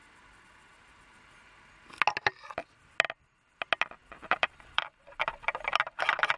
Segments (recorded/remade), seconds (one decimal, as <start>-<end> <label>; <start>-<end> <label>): 0.0-4.0 recorded; 4.0-5.7 remade; 5.7-6.4 recorded